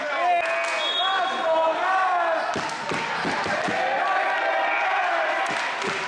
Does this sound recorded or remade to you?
recorded